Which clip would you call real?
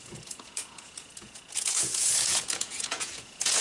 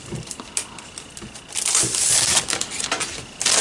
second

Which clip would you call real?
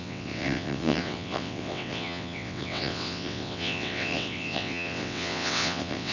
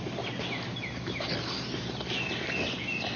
second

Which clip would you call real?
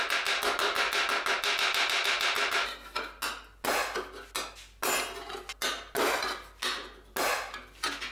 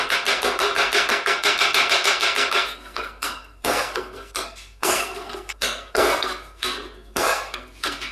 first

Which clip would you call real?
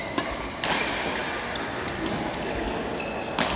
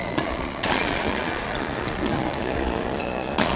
first